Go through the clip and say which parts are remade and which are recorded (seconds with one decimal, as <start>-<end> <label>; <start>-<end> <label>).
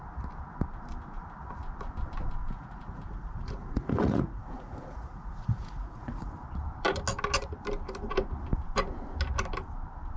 0.0-2.4 recorded; 2.4-6.3 remade; 6.3-10.2 recorded